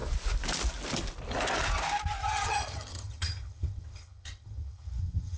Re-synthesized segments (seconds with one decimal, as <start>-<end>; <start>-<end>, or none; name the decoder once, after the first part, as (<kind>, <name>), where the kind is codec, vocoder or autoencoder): 2.2-5.4 (vocoder, HiFi-GAN)